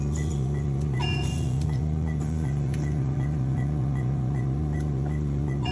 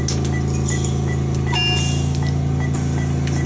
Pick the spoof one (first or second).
first